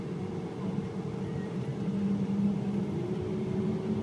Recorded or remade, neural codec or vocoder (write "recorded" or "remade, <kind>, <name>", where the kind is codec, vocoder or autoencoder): recorded